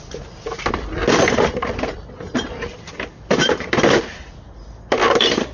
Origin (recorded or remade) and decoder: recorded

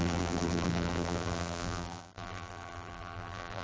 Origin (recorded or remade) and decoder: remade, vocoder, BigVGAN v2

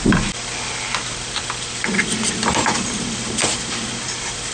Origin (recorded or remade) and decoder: recorded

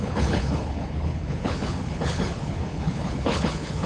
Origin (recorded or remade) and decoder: remade, codec, HILCodec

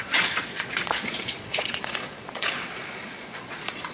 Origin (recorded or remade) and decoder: remade, vocoder, Vocos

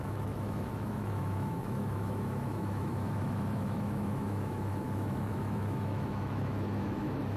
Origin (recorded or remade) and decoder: remade, autoencoder, DAC-VAE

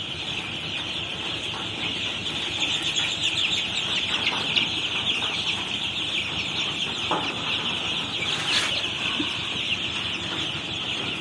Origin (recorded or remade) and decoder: recorded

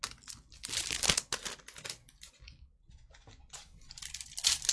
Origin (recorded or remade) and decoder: recorded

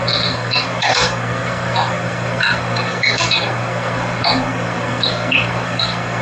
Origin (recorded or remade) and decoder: remade, codec, SNAC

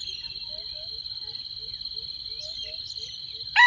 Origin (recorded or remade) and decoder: recorded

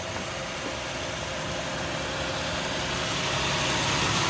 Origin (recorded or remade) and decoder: recorded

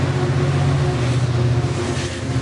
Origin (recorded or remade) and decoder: recorded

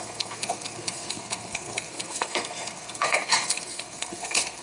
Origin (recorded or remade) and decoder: remade, codec, SNAC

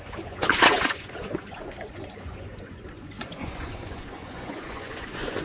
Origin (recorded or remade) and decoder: remade, vocoder, Vocos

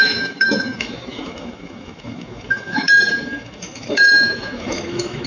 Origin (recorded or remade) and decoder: remade, autoencoder, DAC-VAE